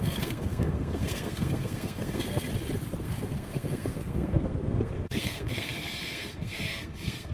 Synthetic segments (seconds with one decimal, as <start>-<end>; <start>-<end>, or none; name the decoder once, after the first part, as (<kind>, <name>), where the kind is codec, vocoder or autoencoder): 0.0-2.5 (codec, SNAC); 3.0-7.3